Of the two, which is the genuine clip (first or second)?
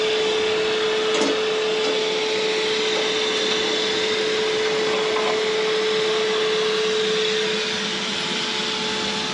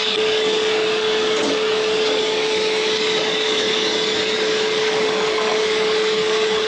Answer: first